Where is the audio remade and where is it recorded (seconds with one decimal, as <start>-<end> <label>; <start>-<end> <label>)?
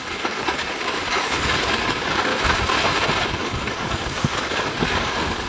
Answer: 0.0-2.3 remade; 2.3-3.3 recorded; 3.3-5.5 remade